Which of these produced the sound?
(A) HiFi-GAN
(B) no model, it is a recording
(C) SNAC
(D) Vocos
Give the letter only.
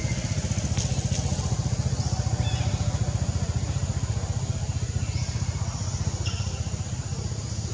B